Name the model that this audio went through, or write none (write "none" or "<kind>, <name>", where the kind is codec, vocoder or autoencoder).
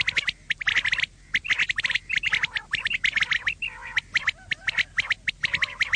none